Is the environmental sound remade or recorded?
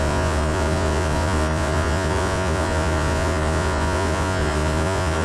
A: remade